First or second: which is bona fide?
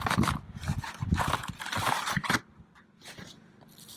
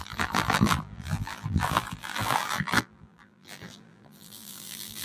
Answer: first